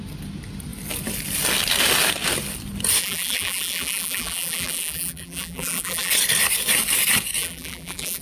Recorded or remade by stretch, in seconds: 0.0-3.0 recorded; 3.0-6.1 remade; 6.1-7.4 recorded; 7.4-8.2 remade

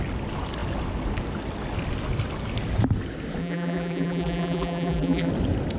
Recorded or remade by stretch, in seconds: 0.0-3.4 recorded; 3.4-5.3 remade; 5.3-5.8 recorded

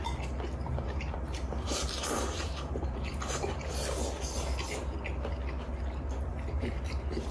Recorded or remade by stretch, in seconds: 0.0-0.7 recorded; 0.7-3.7 remade; 3.7-6.3 recorded; 6.3-7.3 remade

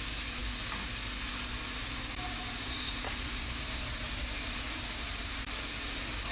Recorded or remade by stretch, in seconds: 0.0-1.8 recorded; 1.8-5.6 remade; 5.6-6.3 recorded